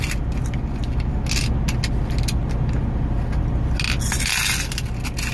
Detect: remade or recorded recorded